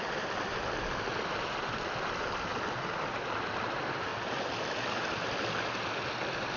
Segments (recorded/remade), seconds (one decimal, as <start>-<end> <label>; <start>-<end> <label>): 0.0-6.6 recorded